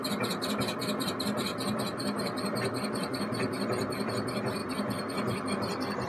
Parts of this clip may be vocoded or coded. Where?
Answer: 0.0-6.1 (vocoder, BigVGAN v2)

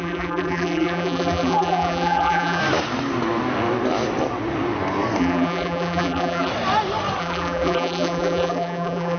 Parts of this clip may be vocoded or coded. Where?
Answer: 0.0-2.6 (vocoder, BigVGAN v2); 5.2-6.5; 7.2-9.2

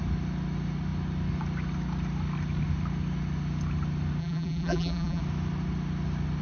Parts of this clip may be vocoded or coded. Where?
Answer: 4.2-5.2 (vocoder, BigVGAN v2)